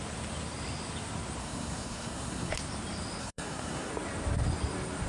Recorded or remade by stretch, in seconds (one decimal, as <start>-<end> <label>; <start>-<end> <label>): 0.0-1.4 recorded; 1.4-2.5 remade; 2.5-3.2 recorded; 3.2-3.9 remade; 3.9-5.1 recorded